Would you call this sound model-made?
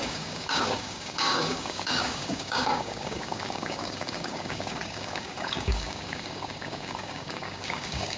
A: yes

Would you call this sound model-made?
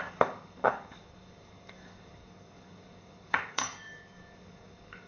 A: yes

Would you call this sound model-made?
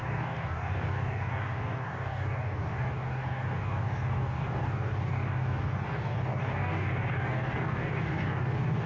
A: yes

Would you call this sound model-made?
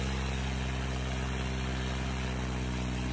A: no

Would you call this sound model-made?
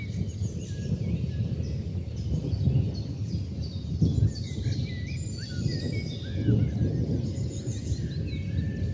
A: no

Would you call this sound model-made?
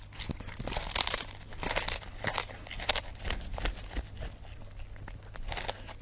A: no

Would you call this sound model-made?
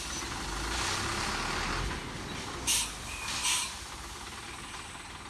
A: no